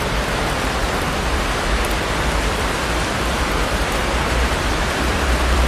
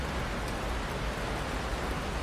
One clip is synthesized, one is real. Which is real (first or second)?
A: second